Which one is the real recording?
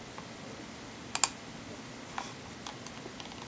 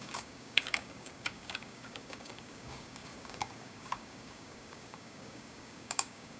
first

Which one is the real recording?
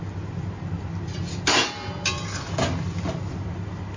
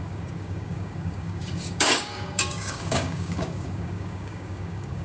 first